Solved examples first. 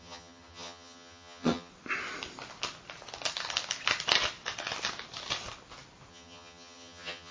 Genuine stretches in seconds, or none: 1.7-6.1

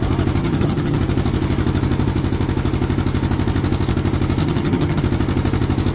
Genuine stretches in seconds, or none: 0.0-0.4; 1.0-4.4; 5.0-5.9

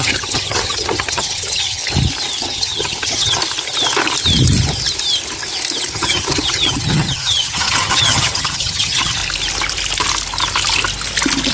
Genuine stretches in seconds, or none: 1.8-2.4; 3.4-5.9; 9.2-11.5